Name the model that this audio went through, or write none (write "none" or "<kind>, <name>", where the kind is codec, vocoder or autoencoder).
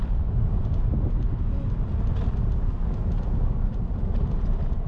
none